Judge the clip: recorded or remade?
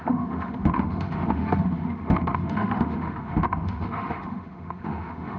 remade